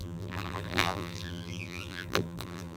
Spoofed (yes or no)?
yes